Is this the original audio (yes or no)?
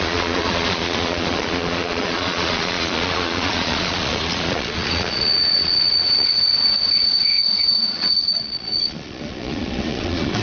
no